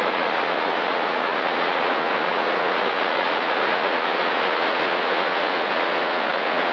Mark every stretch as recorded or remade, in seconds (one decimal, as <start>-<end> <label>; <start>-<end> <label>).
0.0-6.7 remade